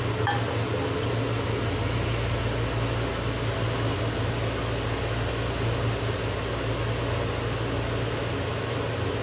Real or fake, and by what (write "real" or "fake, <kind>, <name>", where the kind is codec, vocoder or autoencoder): real